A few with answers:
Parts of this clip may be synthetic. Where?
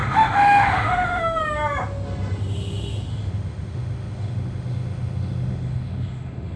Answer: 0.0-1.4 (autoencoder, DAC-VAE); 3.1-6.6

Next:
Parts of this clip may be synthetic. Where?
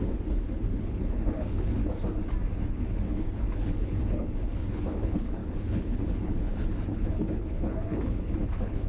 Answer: 0.0-1.8 (codec, HILCodec); 2.6-8.9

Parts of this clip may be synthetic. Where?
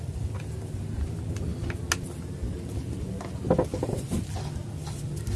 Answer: none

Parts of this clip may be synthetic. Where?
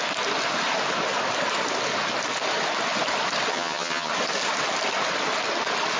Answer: 3.5-4.1 (vocoder, HiFi-GAN)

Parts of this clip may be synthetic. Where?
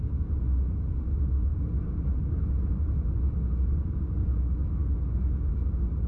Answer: none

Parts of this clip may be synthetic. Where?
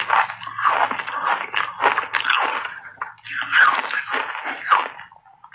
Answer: 2.5-3.1 (vocoder, HiFi-GAN)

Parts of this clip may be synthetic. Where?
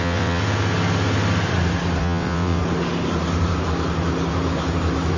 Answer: 0.0-0.4 (vocoder, WaveNeXt); 2.0-2.6